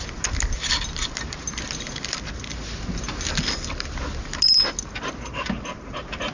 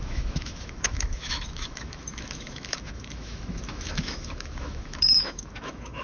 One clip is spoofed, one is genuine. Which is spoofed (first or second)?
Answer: second